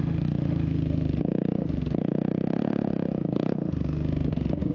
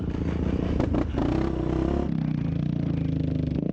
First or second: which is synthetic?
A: first